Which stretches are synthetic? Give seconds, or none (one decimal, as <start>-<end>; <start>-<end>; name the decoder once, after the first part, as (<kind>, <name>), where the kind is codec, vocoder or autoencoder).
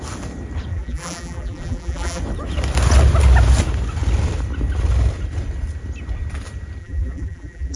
0.7-2.2 (vocoder, BigVGAN v2); 6.8-7.8